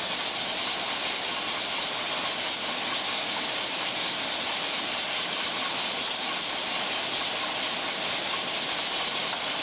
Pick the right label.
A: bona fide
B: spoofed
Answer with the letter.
A